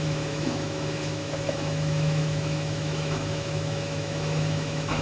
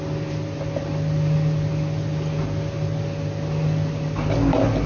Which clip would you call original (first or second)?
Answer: second